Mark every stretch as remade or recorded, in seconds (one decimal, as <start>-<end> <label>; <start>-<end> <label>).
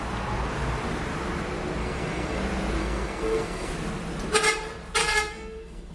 0.0-1.8 recorded; 1.8-2.4 remade; 2.4-2.8 recorded; 2.8-3.7 remade; 3.7-5.0 recorded; 5.0-5.9 remade